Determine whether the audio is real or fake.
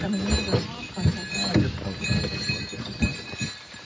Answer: real